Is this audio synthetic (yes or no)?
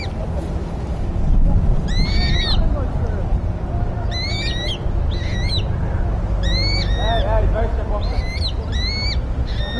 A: no